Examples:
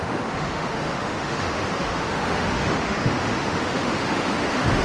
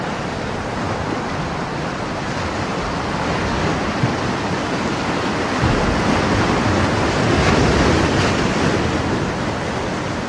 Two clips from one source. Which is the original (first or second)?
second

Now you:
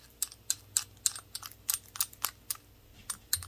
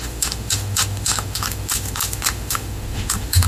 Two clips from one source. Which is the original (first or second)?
first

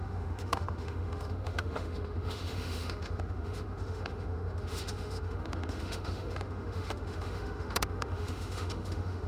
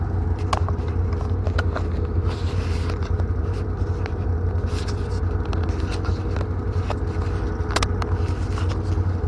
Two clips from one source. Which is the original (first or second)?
second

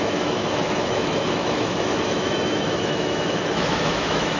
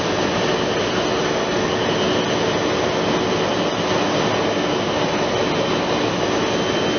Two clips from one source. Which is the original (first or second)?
second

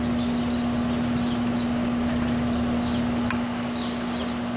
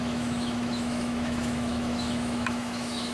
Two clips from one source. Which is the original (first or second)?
first